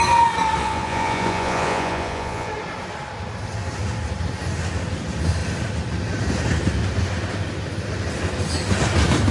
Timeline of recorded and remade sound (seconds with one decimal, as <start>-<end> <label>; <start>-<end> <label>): 0.0-0.6 recorded; 0.6-2.5 remade; 2.5-9.3 recorded